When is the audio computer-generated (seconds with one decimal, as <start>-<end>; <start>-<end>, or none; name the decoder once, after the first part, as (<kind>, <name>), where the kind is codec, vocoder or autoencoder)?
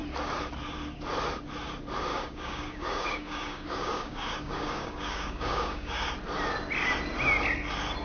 2.1-6.1 (codec, DAC)